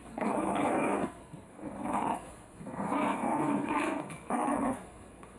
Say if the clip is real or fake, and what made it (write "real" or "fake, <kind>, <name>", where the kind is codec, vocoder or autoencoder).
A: fake, codec, SNAC